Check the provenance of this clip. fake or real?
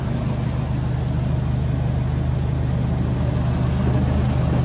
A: real